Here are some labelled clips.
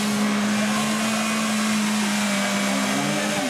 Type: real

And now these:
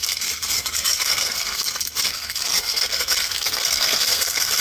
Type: fake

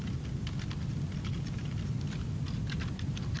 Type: real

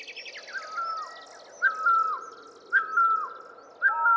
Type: real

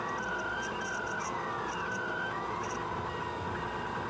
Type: real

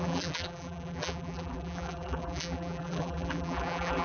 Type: fake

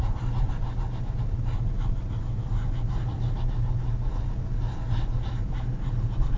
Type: real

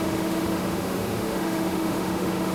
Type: fake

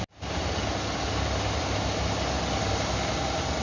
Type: real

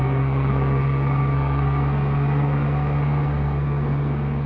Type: fake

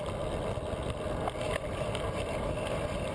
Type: real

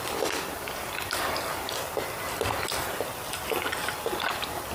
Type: real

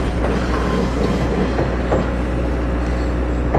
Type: real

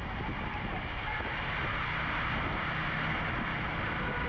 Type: real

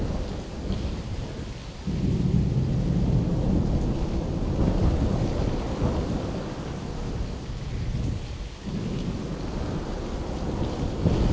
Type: real